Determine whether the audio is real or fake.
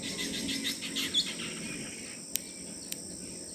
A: real